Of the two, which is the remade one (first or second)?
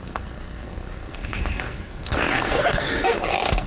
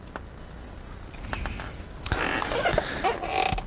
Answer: first